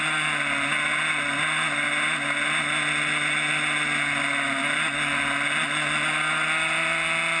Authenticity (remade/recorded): recorded